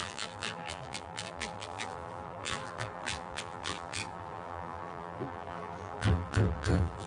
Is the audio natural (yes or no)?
no